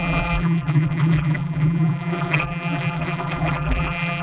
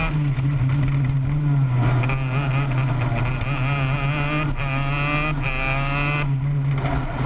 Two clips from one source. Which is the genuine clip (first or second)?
second